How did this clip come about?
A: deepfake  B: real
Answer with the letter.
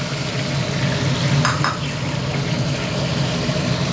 B